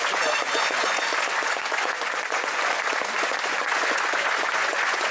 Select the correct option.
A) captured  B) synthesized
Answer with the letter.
B